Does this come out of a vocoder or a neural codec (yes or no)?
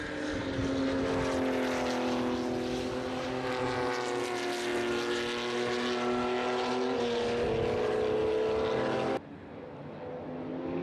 no